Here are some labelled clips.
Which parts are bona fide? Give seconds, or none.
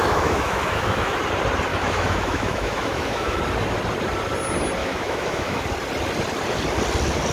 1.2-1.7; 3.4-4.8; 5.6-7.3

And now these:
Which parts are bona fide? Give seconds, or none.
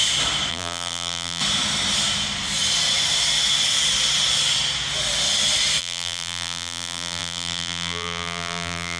0.0-0.5; 1.4-5.8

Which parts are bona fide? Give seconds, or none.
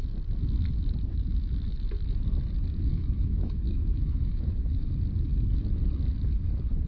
0.0-2.9; 4.9-6.9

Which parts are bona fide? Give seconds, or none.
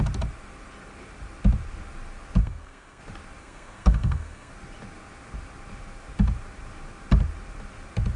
0.0-2.4; 3.0-3.4; 4.5-8.2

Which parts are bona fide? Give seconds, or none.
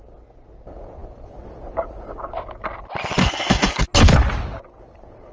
0.0-3.2; 3.8-5.3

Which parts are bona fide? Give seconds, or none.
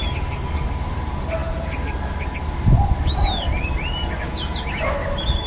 0.0-5.5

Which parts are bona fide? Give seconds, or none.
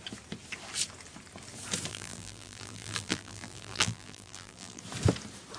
0.0-1.9; 4.8-5.6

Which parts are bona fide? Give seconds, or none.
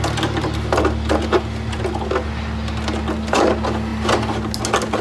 0.0-5.0